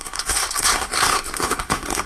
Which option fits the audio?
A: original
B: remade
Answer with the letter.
B